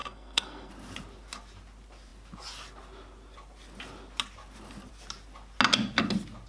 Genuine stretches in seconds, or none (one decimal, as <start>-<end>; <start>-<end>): 0.7-6.5